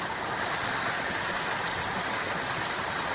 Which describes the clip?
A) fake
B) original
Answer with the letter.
B